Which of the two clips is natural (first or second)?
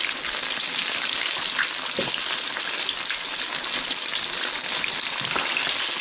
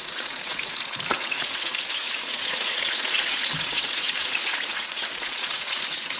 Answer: first